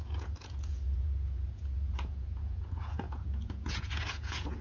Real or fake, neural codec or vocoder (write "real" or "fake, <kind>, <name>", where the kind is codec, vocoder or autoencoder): fake, vocoder, Vocos